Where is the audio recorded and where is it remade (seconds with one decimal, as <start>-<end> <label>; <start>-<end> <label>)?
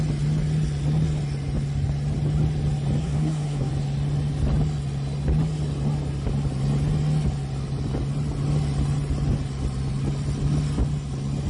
0.0-3.0 recorded; 3.0-3.7 remade; 3.7-11.5 recorded